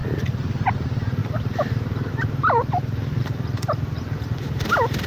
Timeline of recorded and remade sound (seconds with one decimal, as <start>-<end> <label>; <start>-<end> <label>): 0.0-0.7 recorded; 0.7-2.6 remade; 2.6-3.2 recorded; 3.2-5.1 remade

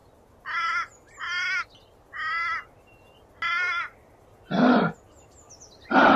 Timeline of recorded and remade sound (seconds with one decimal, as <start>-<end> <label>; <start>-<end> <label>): 0.0-6.2 recorded

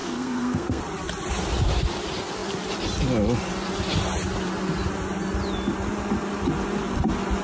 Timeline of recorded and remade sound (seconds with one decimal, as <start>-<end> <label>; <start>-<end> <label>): 0.0-0.8 remade; 0.8-7.4 recorded

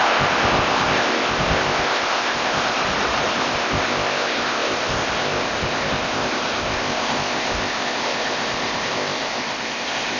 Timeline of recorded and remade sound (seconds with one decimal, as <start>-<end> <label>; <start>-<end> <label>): 0.0-2.8 remade; 2.8-3.3 recorded; 3.3-10.2 remade

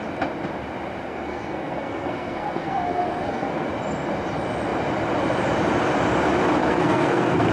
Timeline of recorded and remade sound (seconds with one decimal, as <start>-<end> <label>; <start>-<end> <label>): 0.0-1.0 recorded; 1.0-3.7 remade; 3.7-6.6 recorded; 6.6-7.5 remade

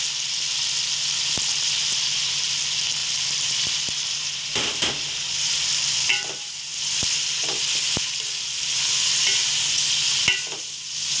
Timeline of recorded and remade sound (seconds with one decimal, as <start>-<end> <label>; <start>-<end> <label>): 0.0-3.0 recorded; 3.0-4.9 remade; 4.9-11.2 recorded

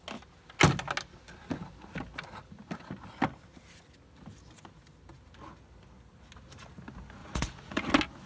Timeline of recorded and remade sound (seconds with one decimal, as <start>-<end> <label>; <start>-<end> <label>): 0.0-7.2 recorded; 7.2-7.9 remade; 7.9-8.3 recorded